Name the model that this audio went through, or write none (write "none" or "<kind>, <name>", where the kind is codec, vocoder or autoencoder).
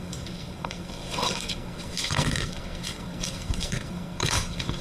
codec, SNAC